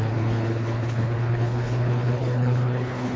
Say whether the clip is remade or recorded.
remade